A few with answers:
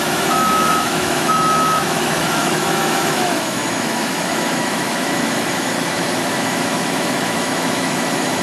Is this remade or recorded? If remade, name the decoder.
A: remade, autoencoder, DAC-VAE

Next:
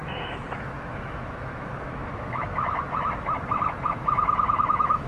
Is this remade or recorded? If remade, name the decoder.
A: remade, autoencoder, DAC-VAE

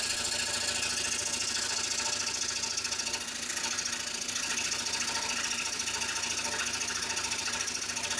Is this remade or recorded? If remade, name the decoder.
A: recorded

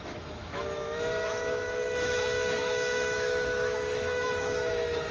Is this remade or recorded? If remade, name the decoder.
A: remade, autoencoder, DAC-VAE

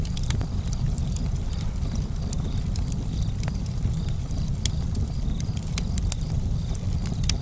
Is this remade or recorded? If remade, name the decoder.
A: recorded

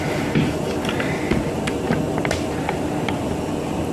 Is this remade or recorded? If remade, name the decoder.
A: recorded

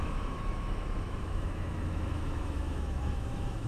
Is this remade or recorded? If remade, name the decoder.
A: remade, autoencoder, DAC-VAE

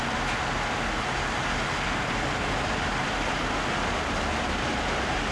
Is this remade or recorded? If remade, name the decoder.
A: recorded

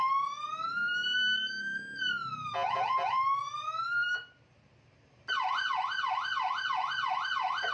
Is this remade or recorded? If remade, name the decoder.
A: recorded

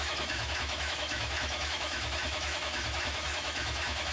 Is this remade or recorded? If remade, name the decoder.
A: remade, autoencoder, DAC-VAE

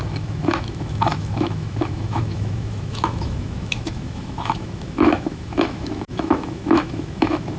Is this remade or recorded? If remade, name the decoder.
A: remade, autoencoder, DAC-VAE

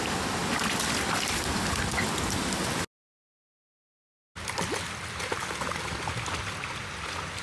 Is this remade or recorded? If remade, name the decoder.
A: recorded